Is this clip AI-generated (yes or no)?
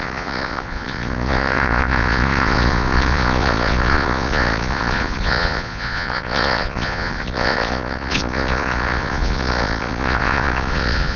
yes